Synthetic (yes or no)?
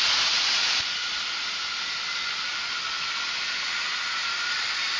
no